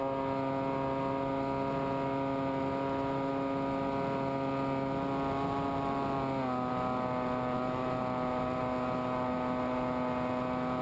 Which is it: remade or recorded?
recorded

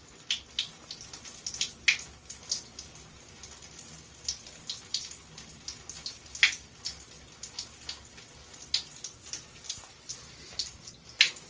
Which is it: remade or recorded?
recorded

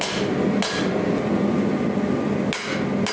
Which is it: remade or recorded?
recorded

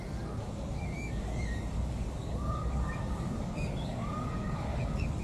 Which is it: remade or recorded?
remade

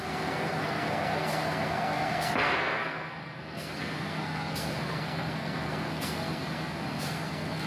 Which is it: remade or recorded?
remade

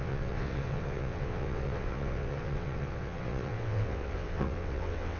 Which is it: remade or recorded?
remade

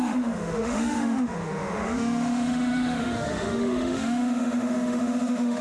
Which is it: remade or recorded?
remade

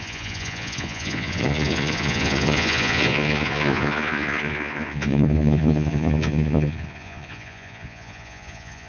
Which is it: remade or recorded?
remade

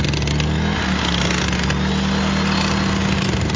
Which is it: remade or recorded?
recorded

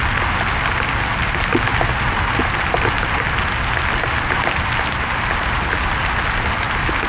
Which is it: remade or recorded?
recorded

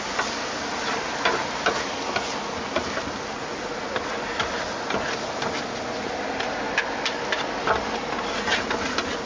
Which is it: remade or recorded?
recorded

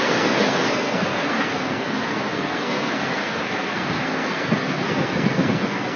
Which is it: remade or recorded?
remade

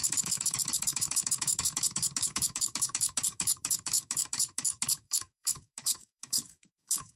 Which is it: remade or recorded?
remade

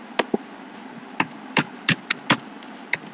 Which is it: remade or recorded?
recorded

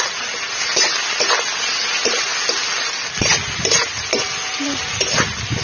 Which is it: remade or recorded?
recorded